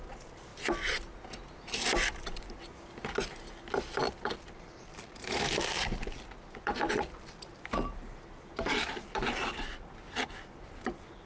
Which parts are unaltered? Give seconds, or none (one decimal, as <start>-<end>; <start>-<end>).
0.0-4.9; 5.5-11.3